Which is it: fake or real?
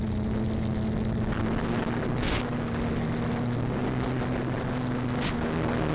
real